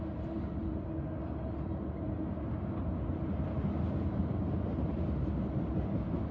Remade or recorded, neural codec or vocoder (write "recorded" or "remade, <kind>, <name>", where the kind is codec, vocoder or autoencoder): recorded